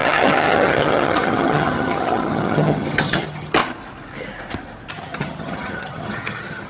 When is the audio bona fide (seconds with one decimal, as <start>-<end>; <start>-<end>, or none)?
3.6-4.9

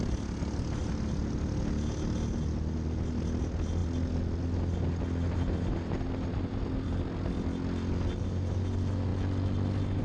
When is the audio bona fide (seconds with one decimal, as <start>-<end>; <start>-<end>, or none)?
0.0-10.0

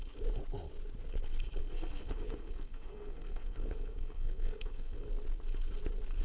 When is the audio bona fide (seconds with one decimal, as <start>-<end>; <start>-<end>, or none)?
0.0-1.6; 5.1-6.2

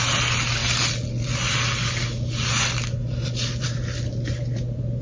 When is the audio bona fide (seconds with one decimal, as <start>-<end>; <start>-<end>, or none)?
0.0-5.0

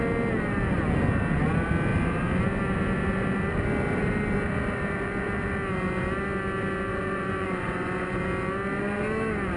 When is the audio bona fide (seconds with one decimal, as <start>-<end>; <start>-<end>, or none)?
0.0-6.9; 8.2-9.6

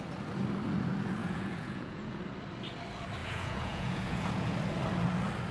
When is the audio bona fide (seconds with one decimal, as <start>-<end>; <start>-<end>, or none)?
0.0-1.2; 2.2-3.2; 4.5-5.5

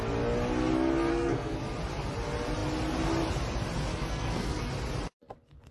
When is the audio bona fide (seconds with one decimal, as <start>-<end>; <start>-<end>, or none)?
0.0-1.1; 1.6-3.9; 4.7-5.7